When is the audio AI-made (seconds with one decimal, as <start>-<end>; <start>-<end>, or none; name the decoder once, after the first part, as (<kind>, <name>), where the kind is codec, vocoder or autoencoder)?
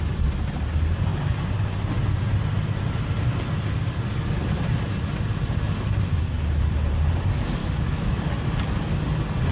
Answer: 7.6-8.2 (autoencoder, DAC-VAE)